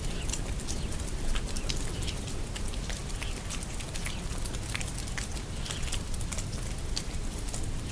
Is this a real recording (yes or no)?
yes